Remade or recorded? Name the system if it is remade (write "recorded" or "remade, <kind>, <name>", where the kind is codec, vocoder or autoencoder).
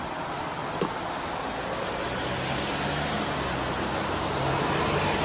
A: recorded